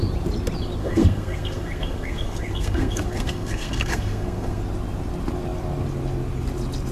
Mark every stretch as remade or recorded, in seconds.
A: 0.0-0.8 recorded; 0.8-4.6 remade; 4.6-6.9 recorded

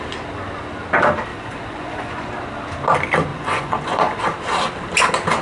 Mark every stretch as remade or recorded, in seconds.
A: 0.0-1.3 recorded; 1.3-2.3 remade; 2.3-3.3 recorded; 3.3-4.2 remade; 4.2-5.4 recorded

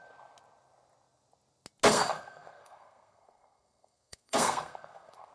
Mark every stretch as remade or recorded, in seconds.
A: 0.0-1.9 recorded; 1.9-5.3 remade

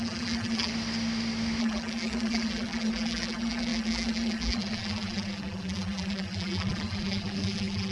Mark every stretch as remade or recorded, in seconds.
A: 0.0-0.7 remade; 0.7-1.6 recorded; 1.6-7.9 remade

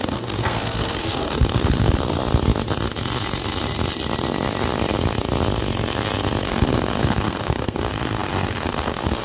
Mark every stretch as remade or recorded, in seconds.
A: 0.0-2.2 remade; 2.2-6.4 recorded; 6.4-9.2 remade